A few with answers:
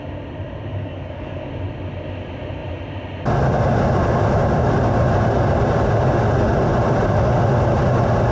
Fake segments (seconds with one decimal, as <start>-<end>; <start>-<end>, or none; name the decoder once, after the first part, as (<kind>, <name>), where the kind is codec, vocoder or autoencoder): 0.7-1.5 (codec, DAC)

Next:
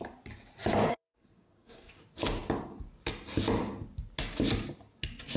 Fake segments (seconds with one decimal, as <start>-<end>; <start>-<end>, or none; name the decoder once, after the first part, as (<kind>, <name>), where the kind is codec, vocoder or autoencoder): 0.9-2.0 (codec, SNAC)

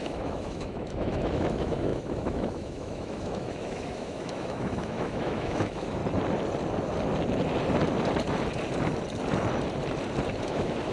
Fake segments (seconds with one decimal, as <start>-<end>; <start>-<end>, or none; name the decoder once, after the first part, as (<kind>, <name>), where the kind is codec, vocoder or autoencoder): 0.0-6.0 (autoencoder, DAC-VAE); 10.4-10.9

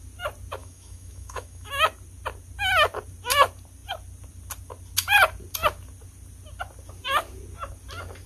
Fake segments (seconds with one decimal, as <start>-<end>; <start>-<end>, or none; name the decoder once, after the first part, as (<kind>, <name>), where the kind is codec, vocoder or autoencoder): 0.6-1.7 (autoencoder, DAC-VAE)

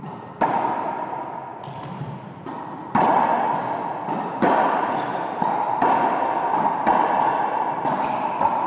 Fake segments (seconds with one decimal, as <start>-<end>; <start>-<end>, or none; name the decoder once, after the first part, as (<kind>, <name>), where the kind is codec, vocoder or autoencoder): none

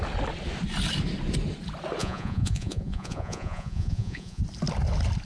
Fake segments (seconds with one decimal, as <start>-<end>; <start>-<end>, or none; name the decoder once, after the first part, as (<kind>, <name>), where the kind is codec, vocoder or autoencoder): 2.0-4.4 (vocoder, Vocos)

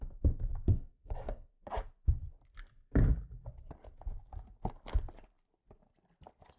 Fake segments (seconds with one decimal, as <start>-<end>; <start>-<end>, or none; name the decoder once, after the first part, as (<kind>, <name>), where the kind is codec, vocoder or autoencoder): 0.7-1.5 (codec, DAC)

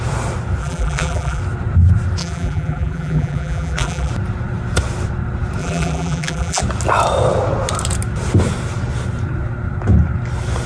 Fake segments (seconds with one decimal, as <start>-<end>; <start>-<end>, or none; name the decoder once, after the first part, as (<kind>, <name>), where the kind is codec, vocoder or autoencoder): 0.6-1.4 (vocoder, BigVGAN v2); 2.2-4.1; 5.6-6.6